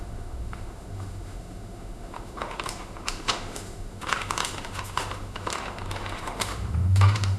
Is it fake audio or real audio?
fake